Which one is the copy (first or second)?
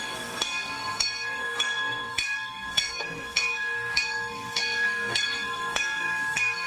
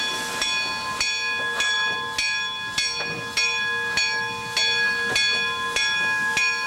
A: first